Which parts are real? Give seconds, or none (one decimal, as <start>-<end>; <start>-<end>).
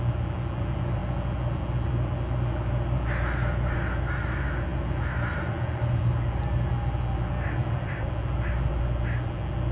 0.0-9.7